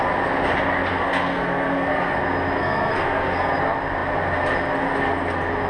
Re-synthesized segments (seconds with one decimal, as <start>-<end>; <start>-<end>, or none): 0.9-2.2; 2.6-3.5